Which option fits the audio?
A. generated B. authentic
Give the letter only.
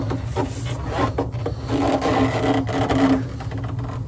B